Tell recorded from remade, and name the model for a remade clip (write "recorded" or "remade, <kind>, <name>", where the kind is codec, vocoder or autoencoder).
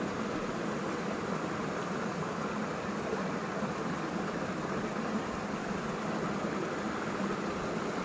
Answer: recorded